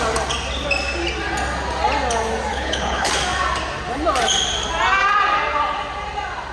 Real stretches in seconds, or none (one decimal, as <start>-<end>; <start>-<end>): 0.0-2.5; 3.1-6.5